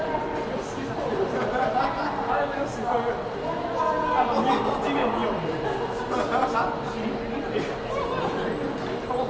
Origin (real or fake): real